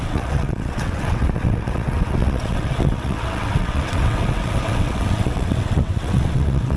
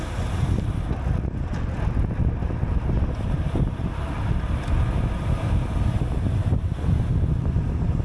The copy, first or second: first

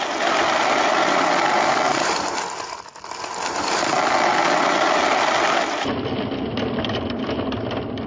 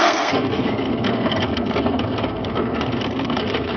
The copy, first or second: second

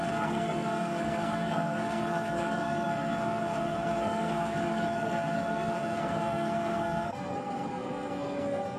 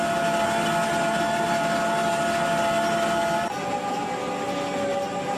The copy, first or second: first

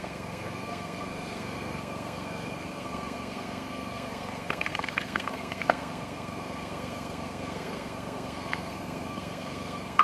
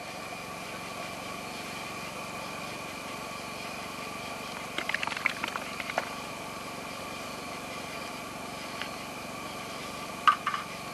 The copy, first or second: first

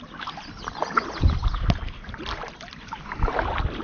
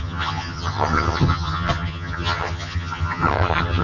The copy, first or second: second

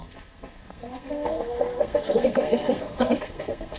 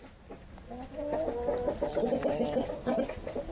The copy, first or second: first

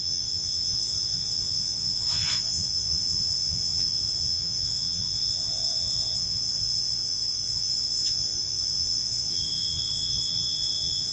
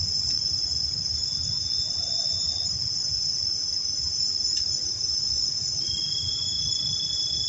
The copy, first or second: first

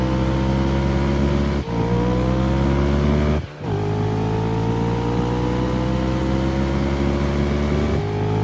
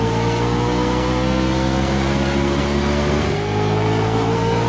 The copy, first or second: second